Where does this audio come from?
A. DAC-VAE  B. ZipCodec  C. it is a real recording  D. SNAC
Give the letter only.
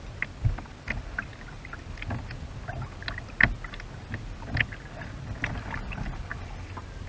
C